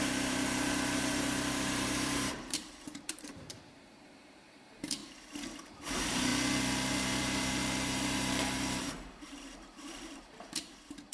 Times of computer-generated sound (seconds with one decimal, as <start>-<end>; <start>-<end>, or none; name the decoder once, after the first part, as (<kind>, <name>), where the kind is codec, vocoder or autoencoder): 0.0-5.0 (vocoder, BigVGAN v2); 5.7-6.3; 6.9-11.1